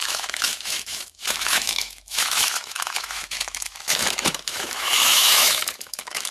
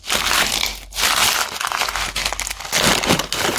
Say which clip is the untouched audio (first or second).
second